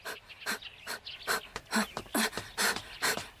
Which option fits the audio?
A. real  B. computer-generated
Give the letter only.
A